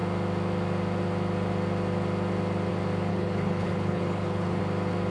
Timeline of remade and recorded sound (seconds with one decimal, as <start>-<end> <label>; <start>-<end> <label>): 0.0-3.1 recorded; 3.1-4.6 remade; 4.6-5.1 recorded